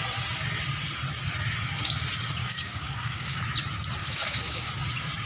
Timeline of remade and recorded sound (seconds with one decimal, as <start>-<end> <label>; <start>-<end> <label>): 0.0-2.4 recorded; 2.4-3.4 remade; 3.4-4.0 recorded; 4.0-4.7 remade; 4.7-5.3 recorded

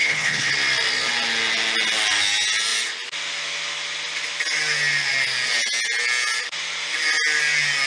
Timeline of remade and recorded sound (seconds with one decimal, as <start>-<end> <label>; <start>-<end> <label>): 0.0-0.5 remade; 0.5-7.9 recorded

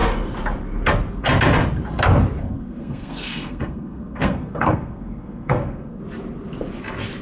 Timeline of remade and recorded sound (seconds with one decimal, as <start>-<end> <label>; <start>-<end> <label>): 0.0-2.4 recorded; 2.4-6.0 remade; 6.0-7.2 recorded

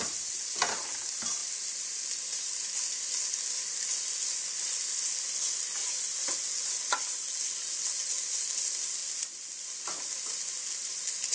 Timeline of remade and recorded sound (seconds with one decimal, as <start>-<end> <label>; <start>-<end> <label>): 0.0-11.3 recorded